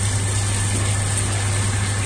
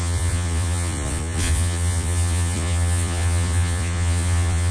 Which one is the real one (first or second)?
first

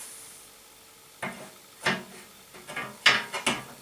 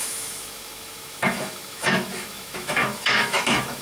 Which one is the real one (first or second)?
first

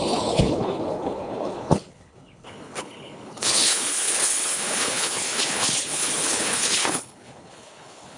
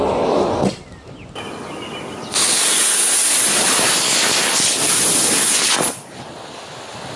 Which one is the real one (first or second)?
second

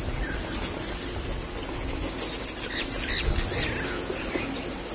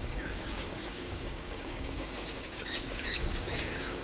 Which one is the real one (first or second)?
first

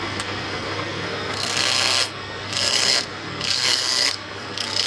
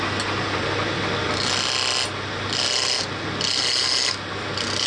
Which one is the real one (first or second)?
second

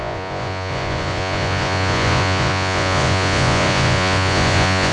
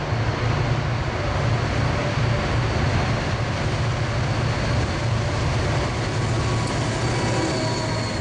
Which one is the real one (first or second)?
second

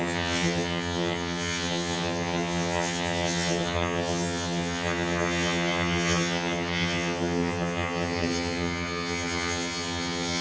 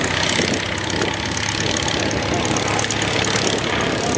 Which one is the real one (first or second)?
second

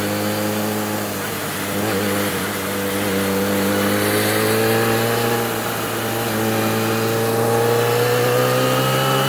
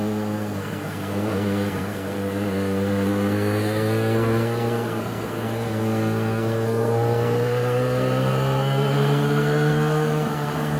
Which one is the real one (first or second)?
first